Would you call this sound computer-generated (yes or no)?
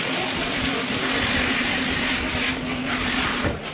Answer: no